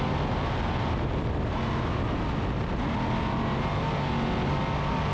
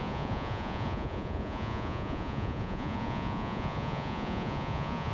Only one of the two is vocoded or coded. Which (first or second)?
second